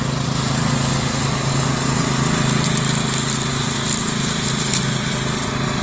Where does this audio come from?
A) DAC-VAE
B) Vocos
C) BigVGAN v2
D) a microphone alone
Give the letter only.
D